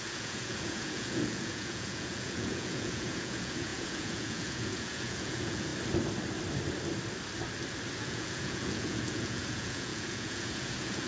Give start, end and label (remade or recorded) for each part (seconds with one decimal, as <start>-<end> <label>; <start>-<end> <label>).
0.0-5.7 remade; 5.7-8.0 recorded; 8.0-11.1 remade